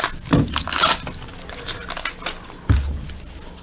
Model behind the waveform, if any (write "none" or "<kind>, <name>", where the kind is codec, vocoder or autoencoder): none